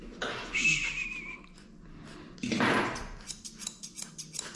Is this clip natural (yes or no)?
yes